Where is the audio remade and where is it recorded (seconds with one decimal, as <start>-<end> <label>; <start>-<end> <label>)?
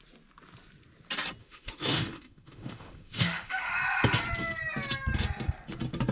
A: 0.0-1.4 recorded; 1.4-3.7 remade; 3.7-6.1 recorded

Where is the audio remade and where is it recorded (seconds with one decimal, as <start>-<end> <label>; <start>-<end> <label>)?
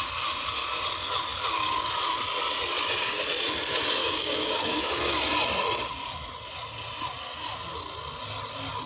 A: 0.0-4.0 recorded; 4.0-4.8 remade; 4.8-8.9 recorded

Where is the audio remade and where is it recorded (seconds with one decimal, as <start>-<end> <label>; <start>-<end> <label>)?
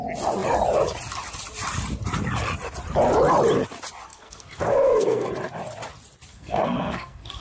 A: 0.0-4.1 recorded; 4.1-5.3 remade; 5.3-6.3 recorded; 6.3-7.4 remade